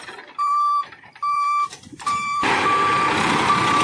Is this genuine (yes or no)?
no